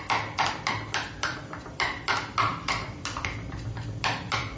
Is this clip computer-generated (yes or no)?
yes